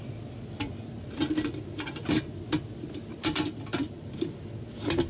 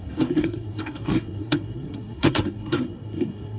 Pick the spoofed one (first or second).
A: second